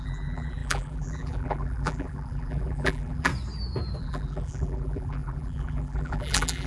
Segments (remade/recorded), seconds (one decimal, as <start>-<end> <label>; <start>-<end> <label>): 0.0-3.3 remade; 3.3-4.0 recorded; 4.0-6.7 remade